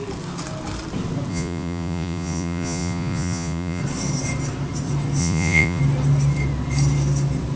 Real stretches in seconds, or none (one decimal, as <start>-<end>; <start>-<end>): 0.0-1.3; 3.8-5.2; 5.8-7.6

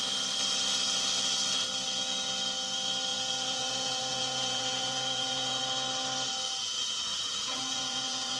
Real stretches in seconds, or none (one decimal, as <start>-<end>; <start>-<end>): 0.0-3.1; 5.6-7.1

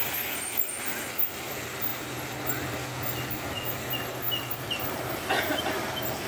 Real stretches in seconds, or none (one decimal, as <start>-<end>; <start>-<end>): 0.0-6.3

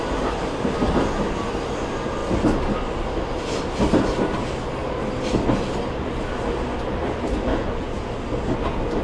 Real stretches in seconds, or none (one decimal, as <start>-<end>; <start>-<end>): 0.0-7.5; 8.1-9.0